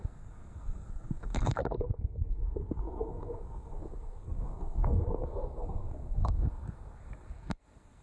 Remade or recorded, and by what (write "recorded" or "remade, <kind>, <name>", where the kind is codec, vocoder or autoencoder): remade, codec, SNAC